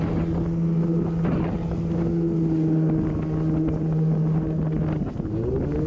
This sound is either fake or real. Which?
real